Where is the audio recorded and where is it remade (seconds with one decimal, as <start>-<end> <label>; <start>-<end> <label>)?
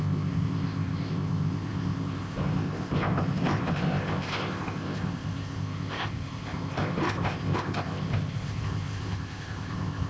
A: 0.0-10.1 remade